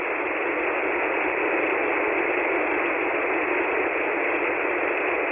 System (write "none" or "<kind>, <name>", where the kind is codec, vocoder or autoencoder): none